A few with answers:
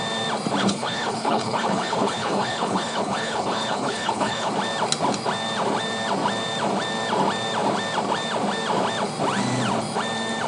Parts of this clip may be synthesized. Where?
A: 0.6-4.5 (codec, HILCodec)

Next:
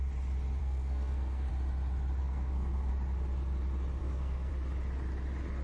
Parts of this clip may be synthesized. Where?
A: 0.6-1.5 (codec, SNAC); 2.2-2.9; 4.0-4.5

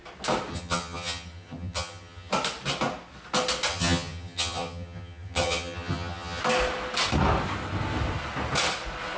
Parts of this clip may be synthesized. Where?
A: 0.5-2.3 (vocoder, HiFi-GAN); 3.7-6.4

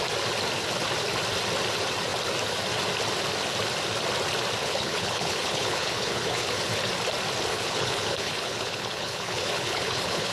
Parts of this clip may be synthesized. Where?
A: 4.6-6.9 (codec, HILCodec); 7.5-10.3

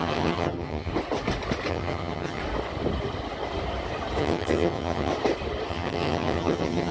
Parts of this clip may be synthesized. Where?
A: 0.0-0.9 (vocoder, HiFi-GAN); 1.7-2.4; 4.2-5.1; 5.7-6.9

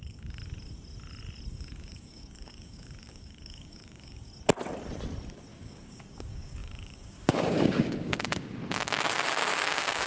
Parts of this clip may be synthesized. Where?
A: 0.0-0.4 (codec, DAC); 1.5-4.3; 5.5-10.1

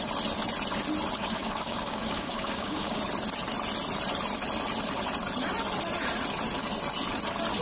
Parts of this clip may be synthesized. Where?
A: 1.2-3.0 (codec, DAC)

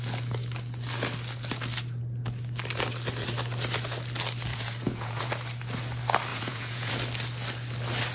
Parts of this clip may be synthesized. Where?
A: 4.5-5.3 (vocoder, Vocos); 6.3-6.9